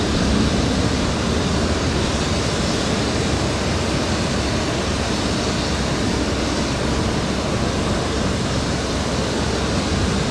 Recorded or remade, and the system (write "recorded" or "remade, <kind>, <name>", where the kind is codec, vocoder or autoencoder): recorded